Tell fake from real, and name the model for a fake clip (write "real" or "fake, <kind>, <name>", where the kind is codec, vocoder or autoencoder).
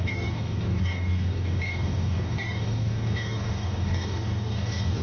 fake, codec, DAC